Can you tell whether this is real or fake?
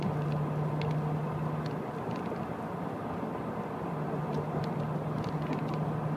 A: real